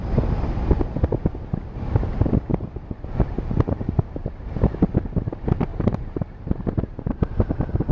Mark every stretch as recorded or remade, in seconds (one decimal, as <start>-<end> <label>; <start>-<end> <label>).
0.0-2.5 recorded; 2.5-4.9 remade; 4.9-5.7 recorded; 5.7-7.5 remade; 7.5-7.9 recorded